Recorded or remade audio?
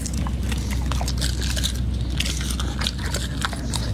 recorded